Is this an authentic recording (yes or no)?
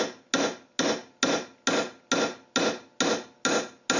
yes